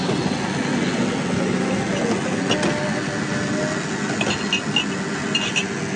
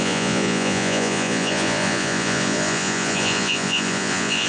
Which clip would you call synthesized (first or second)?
second